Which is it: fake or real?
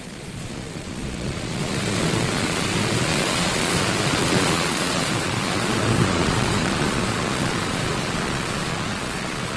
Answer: fake